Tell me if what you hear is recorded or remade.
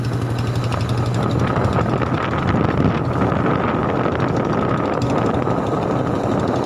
recorded